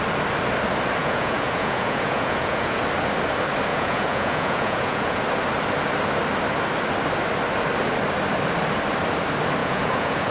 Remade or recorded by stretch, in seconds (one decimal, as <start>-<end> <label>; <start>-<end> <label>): 0.0-1.0 recorded; 1.0-2.8 remade; 2.8-3.7 recorded; 3.7-5.2 remade; 5.2-9.6 recorded; 9.6-10.3 remade